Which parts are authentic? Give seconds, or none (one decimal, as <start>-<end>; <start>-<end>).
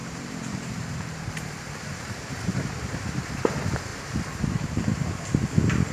3.5-3.9; 5.2-5.9